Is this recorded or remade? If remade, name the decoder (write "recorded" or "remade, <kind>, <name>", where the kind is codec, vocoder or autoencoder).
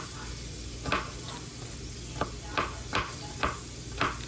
recorded